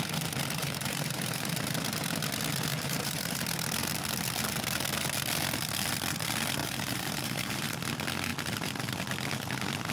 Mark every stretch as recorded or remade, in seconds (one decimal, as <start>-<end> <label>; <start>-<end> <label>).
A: 0.0-0.6 recorded; 0.6-1.5 remade; 1.5-2.7 recorded; 2.7-3.4 remade; 3.4-6.6 recorded; 6.6-7.8 remade; 7.8-9.9 recorded